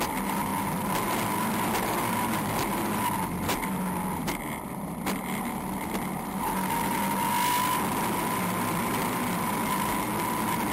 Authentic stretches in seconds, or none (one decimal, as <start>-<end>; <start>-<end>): 0.0-10.7